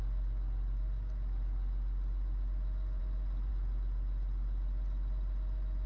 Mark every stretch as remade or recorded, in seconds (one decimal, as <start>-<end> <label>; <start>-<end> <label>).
0.0-5.9 recorded